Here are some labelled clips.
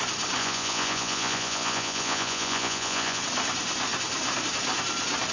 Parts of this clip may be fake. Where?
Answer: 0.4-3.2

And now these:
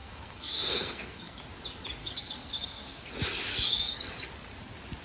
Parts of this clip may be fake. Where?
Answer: 0.0-1.4; 2.0-3.1; 3.5-4.1

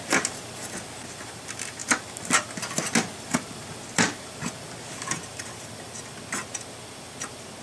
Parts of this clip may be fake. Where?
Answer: none

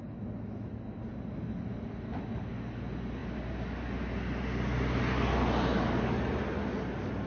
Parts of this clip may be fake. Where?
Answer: none

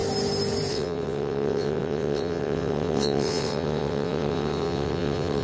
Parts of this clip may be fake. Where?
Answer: 0.7-5.4

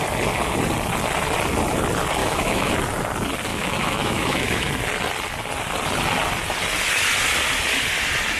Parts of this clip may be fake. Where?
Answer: 2.2-2.7; 3.5-4.7